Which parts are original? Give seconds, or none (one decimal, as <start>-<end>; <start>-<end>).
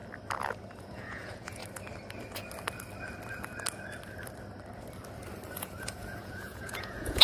0.0-0.8; 1.6-5.5